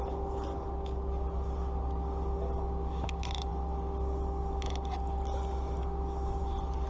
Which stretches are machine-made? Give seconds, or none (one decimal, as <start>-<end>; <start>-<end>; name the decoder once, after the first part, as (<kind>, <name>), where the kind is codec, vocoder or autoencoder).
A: none